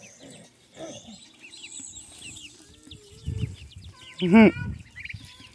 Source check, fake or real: real